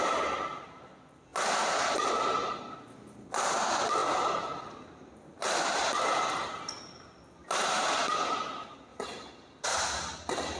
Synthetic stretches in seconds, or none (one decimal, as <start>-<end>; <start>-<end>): 8.9-9.5